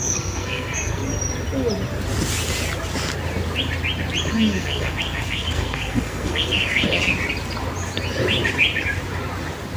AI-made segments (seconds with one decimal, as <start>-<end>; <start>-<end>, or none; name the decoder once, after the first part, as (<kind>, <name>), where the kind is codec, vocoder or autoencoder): 0.0-1.0 (codec, SNAC); 4.3-7.1

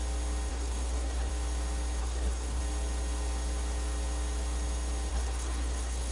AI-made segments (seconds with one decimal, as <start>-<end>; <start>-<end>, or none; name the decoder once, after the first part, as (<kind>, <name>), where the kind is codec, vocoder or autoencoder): 0.5-1.3 (codec, SNAC); 2.0-2.6; 5.1-6.1